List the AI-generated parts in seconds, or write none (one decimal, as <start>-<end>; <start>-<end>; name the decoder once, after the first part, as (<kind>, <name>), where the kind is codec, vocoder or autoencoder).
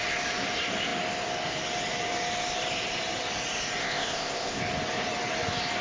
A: 3.8-4.6 (codec, ZipCodec)